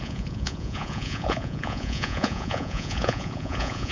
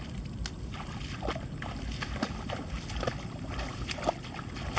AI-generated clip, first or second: first